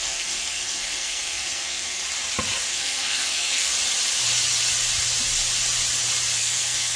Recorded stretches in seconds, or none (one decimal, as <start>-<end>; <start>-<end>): 2.0-2.7; 3.7-6.4